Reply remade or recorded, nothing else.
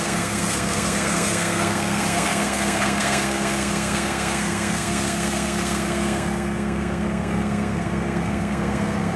remade